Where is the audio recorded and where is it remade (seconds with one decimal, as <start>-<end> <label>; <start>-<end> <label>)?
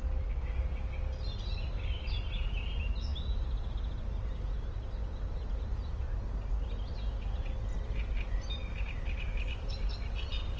0.0-10.6 recorded